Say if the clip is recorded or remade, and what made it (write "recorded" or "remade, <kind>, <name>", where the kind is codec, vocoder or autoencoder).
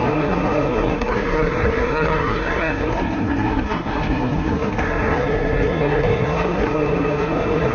remade, codec, SNAC